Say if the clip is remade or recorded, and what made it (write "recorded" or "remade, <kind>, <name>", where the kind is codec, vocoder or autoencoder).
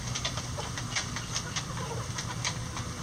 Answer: recorded